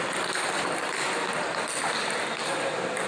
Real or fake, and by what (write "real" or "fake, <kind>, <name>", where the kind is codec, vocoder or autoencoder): real